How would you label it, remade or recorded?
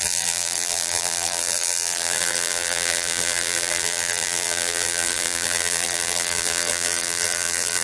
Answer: remade